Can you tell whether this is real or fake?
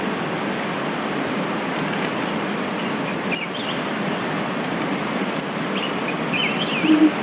fake